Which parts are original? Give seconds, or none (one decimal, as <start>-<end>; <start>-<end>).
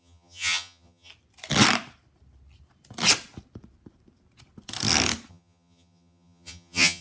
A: 1.1-5.3